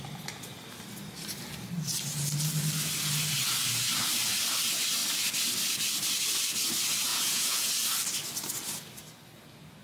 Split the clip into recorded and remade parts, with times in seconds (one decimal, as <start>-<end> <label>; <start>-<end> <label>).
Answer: 0.0-7.1 recorded; 7.1-7.7 remade; 7.7-9.8 recorded